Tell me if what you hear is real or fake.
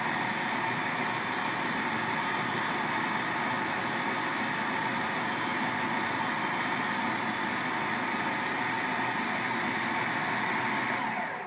real